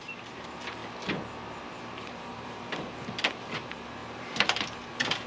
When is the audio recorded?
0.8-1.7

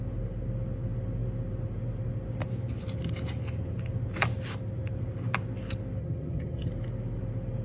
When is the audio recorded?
0.0-6.0; 6.7-7.6

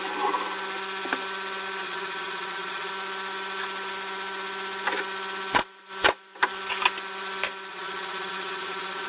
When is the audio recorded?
0.0-1.8; 2.9-7.7

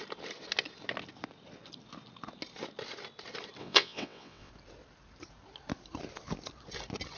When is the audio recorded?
0.0-3.6; 4.5-7.2